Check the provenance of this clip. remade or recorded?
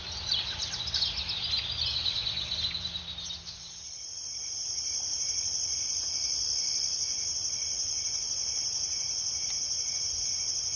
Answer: recorded